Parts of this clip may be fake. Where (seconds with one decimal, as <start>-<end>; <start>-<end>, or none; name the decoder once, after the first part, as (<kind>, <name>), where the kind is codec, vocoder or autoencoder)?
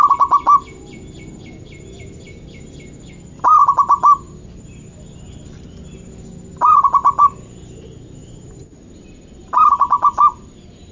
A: none